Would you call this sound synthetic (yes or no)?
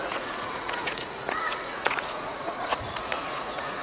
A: yes